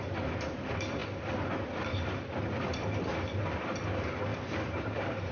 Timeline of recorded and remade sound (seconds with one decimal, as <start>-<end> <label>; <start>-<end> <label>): 0.0-4.3 recorded; 4.3-5.3 remade